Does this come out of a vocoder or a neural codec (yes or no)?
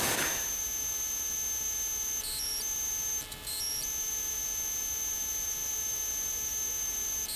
no